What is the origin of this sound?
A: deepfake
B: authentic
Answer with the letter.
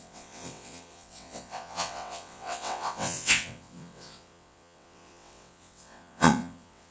A